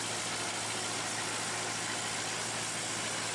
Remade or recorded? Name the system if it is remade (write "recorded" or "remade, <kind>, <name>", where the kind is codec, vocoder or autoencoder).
recorded